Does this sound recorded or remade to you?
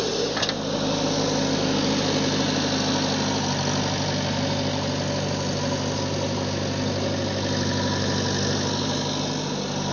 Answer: recorded